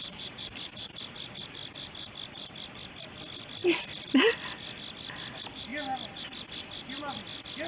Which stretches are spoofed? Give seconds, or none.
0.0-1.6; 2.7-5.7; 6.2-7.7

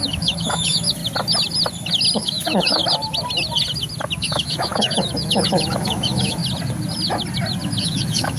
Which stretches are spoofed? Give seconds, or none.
0.0-1.0; 2.1-2.8; 4.2-6.4; 7.8-8.4

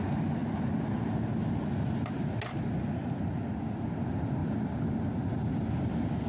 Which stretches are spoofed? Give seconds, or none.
none

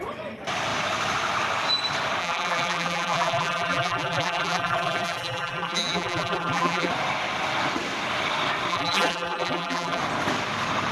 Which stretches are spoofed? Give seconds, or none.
2.2-6.9; 8.7-10.0

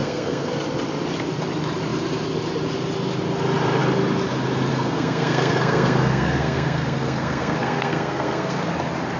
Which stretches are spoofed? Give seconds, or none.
0.0-0.5; 4.7-8.7

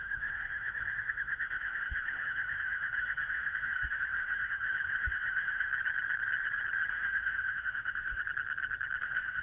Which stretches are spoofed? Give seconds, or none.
0.0-5.7; 6.9-8.2; 9.0-9.4